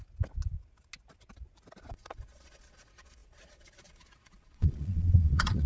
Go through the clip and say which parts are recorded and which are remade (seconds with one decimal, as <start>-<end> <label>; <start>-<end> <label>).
0.0-1.9 recorded; 1.9-5.7 remade